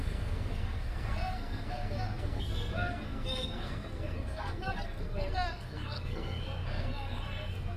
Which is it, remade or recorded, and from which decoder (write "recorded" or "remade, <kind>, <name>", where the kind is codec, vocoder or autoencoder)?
remade, codec, SNAC